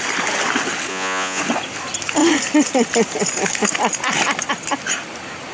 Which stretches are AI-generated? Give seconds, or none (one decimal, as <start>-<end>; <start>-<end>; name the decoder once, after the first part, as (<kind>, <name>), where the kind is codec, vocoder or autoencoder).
0.9-1.4 (vocoder, Vocos)